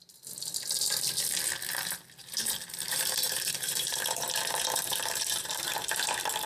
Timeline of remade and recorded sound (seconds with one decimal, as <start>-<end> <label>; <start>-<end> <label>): 0.0-2.2 recorded; 2.2-6.1 remade; 6.1-6.5 recorded